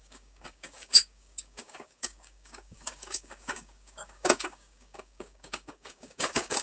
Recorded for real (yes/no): no